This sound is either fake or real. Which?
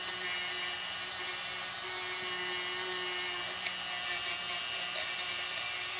real